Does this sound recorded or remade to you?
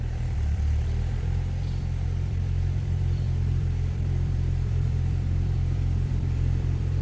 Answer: remade